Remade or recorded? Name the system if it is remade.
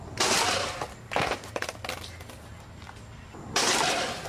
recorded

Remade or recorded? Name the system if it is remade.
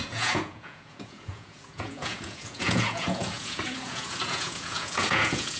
remade, vocoder, Vocos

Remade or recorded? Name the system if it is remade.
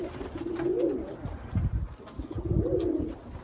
recorded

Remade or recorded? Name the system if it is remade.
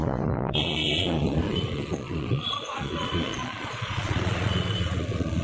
remade, vocoder, Vocos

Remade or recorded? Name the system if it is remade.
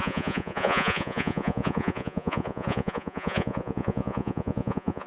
remade, vocoder, Vocos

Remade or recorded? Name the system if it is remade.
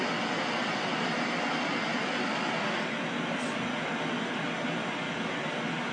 recorded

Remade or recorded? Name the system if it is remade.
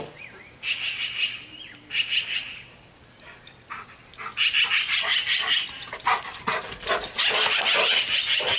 recorded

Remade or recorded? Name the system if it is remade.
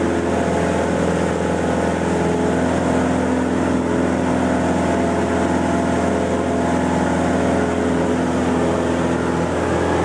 recorded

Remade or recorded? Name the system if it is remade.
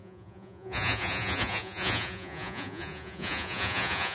remade, vocoder, Vocos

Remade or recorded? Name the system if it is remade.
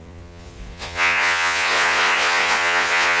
remade, vocoder, Vocos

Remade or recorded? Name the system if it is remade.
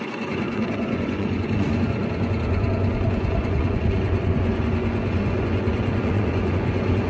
remade, vocoder, Vocos